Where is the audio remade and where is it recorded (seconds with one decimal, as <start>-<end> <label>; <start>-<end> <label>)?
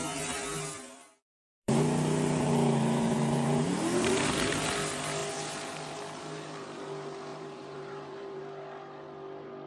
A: 0.0-1.5 recorded; 1.5-4.6 remade; 4.6-7.3 recorded; 7.3-8.4 remade; 8.4-9.7 recorded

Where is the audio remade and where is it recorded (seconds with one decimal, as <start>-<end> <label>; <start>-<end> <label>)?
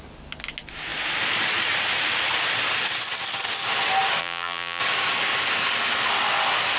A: 0.0-4.2 recorded; 4.2-4.8 remade; 4.8-6.8 recorded